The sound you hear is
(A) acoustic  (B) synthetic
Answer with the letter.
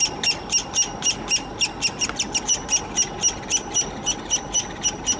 A